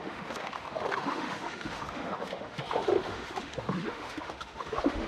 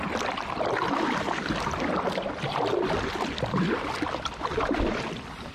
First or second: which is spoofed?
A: first